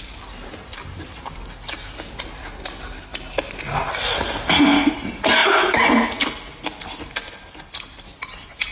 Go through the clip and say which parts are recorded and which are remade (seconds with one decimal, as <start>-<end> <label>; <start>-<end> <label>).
0.0-8.7 recorded